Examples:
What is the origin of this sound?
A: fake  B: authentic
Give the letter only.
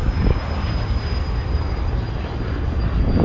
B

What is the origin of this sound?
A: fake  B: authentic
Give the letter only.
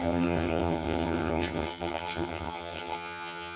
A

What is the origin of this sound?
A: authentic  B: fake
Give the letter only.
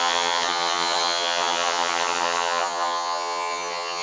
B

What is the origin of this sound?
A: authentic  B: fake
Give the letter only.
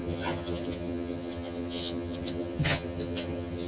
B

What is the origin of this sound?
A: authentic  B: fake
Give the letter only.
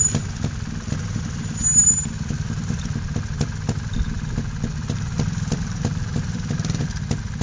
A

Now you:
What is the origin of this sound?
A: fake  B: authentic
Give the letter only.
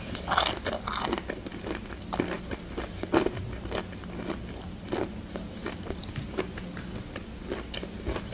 B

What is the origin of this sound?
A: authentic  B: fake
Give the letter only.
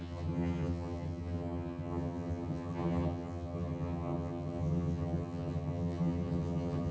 B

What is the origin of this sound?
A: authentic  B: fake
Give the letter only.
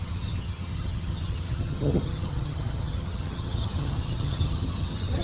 B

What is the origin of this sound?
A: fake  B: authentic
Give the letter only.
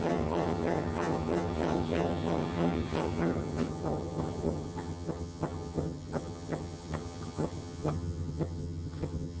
A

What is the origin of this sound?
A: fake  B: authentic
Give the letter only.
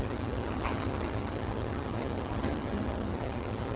A